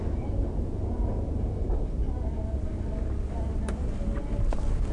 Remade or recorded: recorded